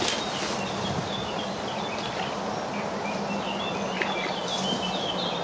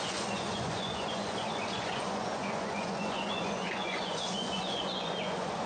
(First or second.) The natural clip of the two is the first